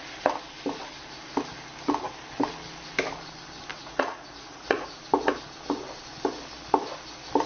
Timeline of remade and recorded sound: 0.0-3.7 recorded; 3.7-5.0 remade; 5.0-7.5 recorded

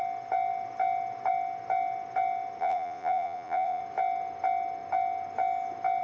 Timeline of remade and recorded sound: 0.0-2.6 recorded; 2.6-3.8 remade; 3.8-6.0 recorded

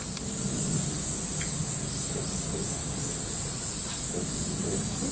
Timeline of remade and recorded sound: 0.0-5.1 recorded

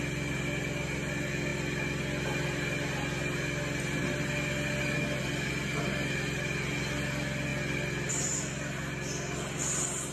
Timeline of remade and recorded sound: 0.0-10.1 recorded

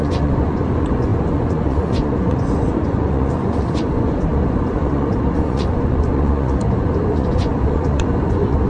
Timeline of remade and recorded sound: 0.0-8.7 remade

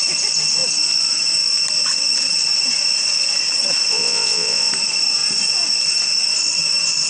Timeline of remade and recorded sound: 0.0-3.9 recorded; 3.9-4.7 remade; 4.7-7.1 recorded